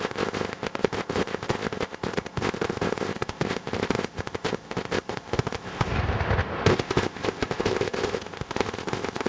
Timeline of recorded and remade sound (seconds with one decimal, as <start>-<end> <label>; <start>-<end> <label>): 0.0-5.9 remade; 5.9-6.7 recorded; 6.7-9.3 remade